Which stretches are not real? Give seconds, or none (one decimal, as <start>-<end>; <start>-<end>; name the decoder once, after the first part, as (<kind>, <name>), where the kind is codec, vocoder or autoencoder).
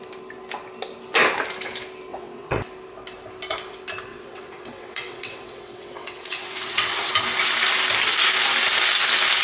2.1-2.6 (vocoder, WaveNeXt); 4.1-7.1